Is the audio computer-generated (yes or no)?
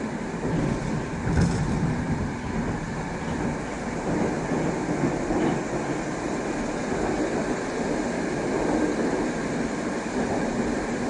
no